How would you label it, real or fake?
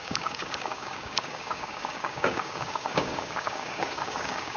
fake